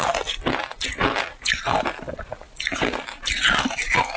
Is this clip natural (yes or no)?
yes